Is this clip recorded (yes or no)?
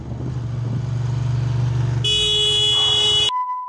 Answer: yes